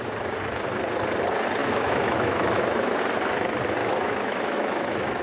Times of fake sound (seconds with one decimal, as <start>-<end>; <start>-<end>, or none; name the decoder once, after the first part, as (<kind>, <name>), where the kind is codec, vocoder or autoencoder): 1.6-3.0 (autoencoder, DAC-VAE); 3.8-5.2